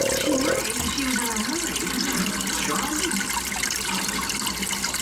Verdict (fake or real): real